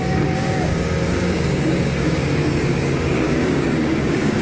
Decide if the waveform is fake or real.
fake